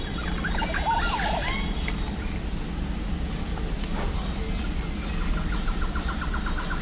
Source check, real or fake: real